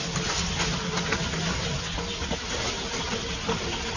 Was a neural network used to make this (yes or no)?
no